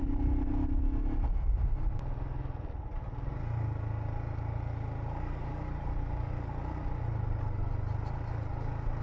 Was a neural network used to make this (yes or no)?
no